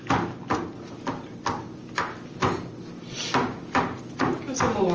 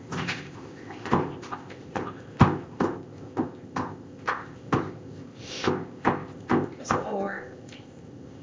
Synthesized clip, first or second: second